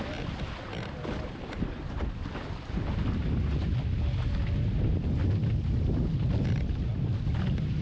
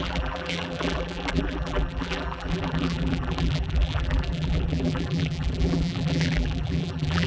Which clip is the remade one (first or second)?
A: second